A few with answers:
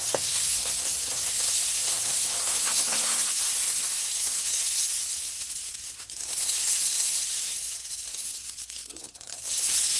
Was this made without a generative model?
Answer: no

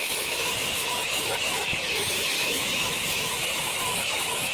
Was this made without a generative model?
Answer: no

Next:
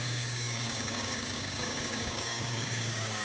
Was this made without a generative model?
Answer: no